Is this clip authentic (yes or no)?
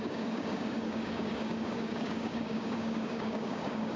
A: no